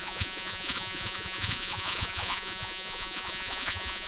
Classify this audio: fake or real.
fake